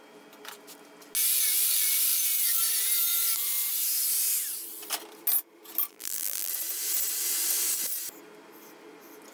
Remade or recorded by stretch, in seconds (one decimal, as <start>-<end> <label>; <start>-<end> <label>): 0.0-5.9 recorded; 5.9-6.5 remade; 6.5-9.3 recorded

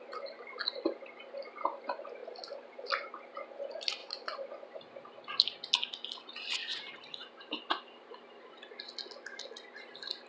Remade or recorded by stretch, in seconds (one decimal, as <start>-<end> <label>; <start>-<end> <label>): 0.0-2.2 recorded; 2.2-3.1 remade; 3.1-4.0 recorded; 4.0-4.8 remade; 4.8-6.6 recorded; 6.6-7.6 remade; 7.6-10.3 recorded

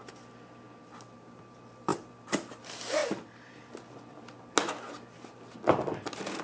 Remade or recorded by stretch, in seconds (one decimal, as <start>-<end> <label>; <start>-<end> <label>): 0.0-1.9 recorded; 1.9-2.6 remade; 2.6-3.0 recorded; 3.0-3.6 remade; 3.6-6.4 recorded

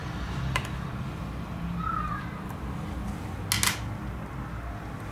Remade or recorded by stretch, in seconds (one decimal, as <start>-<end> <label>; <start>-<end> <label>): 0.0-3.1 remade; 3.1-5.1 recorded

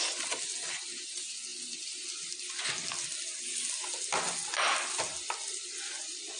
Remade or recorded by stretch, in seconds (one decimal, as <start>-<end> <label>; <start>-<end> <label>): 0.0-6.4 recorded

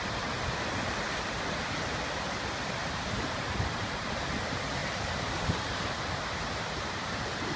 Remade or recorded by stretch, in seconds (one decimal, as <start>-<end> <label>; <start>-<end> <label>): 0.0-2.8 recorded; 2.8-4.3 remade; 4.3-4.8 recorded; 4.8-5.3 remade; 5.3-7.6 recorded